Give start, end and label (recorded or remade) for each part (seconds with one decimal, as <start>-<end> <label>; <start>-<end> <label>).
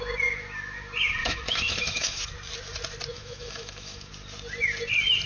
0.0-1.2 recorded; 1.2-2.2 remade; 2.2-3.1 recorded; 3.1-4.1 remade; 4.1-5.3 recorded